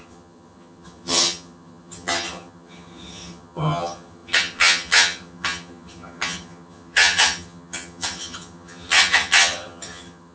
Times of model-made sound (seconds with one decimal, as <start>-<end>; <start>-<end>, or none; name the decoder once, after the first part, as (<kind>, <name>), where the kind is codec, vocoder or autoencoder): 0.0-10.3 (vocoder, HiFi-GAN)